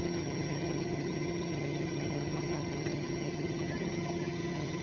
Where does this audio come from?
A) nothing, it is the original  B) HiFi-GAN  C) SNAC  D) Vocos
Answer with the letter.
B